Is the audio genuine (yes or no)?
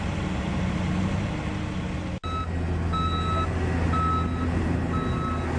yes